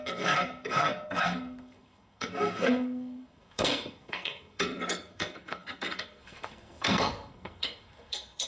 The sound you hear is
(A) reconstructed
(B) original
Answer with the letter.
A